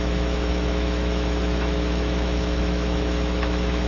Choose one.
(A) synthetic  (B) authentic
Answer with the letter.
A